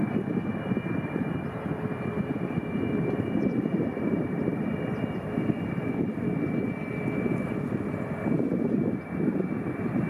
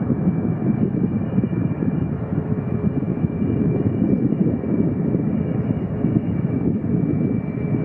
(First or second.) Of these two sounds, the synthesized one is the second